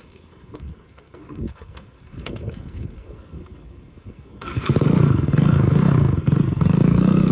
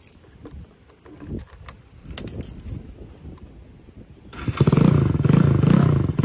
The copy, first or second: first